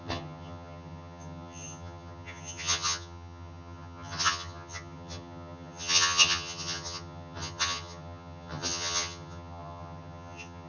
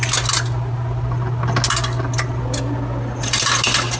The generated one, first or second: first